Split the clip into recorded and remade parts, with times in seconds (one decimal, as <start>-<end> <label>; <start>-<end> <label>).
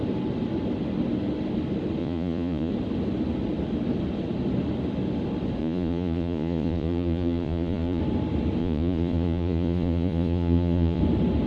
0.0-2.0 recorded; 2.0-2.7 remade; 2.7-5.6 recorded; 5.6-8.0 remade; 8.0-8.6 recorded; 8.6-11.0 remade; 11.0-11.5 recorded